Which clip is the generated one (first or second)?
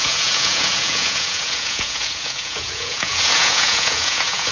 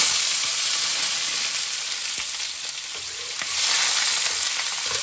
first